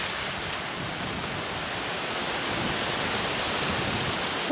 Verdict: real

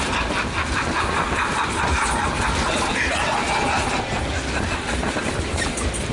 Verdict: real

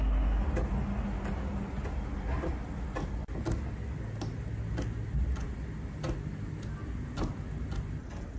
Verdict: real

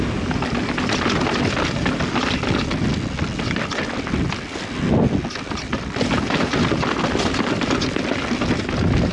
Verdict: real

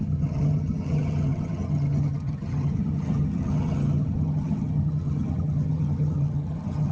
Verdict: fake